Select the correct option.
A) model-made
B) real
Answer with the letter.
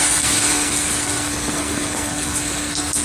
A